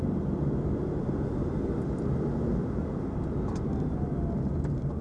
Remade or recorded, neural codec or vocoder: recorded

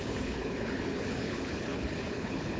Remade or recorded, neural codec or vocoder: remade, codec, HILCodec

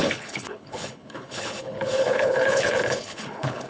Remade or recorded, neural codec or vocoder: remade, codec, HILCodec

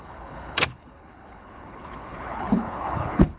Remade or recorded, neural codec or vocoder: remade, codec, HILCodec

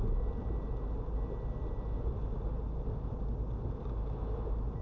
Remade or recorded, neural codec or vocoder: recorded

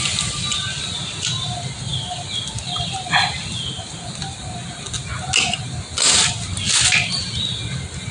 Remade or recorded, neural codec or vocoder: recorded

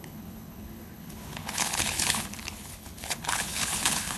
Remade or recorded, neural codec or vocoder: remade, codec, HILCodec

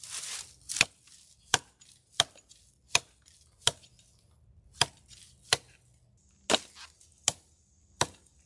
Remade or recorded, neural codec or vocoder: recorded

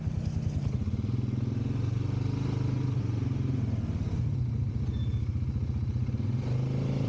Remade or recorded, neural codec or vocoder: recorded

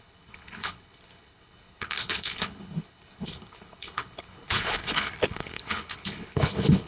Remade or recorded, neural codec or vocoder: remade, codec, HILCodec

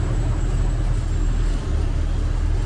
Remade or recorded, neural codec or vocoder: recorded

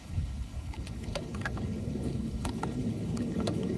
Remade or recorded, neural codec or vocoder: remade, codec, HILCodec